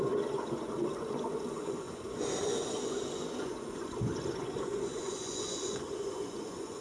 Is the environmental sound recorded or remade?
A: remade